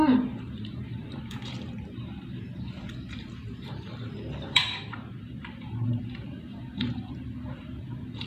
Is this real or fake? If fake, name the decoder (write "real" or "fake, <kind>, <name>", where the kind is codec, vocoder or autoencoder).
fake, vocoder, BigVGAN v2